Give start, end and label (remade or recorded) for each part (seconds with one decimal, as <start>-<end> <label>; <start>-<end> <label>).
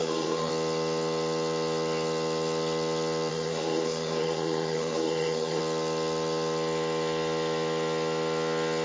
0.0-0.5 remade; 0.5-3.3 recorded; 3.3-5.6 remade; 5.6-8.8 recorded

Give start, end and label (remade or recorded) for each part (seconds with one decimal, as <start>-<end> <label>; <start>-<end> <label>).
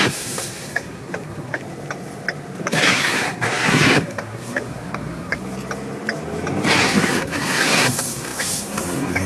0.0-1.6 remade; 1.6-2.6 recorded; 2.6-5.4 remade; 5.4-6.8 recorded; 6.8-9.3 remade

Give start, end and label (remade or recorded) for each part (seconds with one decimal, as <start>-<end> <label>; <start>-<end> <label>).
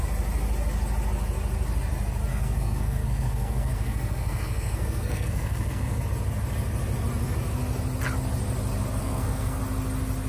0.0-2.3 recorded; 2.3-6.0 remade; 6.0-9.0 recorded; 9.0-9.6 remade; 9.6-10.3 recorded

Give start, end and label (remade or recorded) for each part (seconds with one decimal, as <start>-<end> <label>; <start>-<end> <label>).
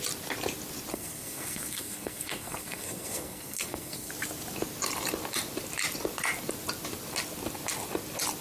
0.0-0.9 recorded; 0.9-4.1 remade; 4.1-8.4 recorded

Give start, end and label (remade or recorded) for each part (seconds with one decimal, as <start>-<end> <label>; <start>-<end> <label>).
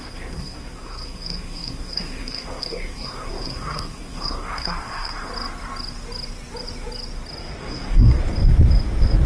0.0-5.3 remade; 5.3-7.6 recorded; 7.6-8.2 remade; 8.2-9.3 recorded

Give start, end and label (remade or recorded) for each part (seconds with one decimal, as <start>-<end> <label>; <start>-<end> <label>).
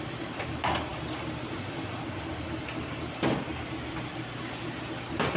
0.0-5.4 recorded